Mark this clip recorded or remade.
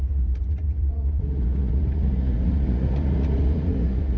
remade